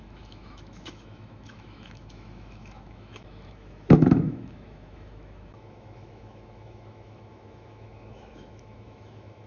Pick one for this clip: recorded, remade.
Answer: remade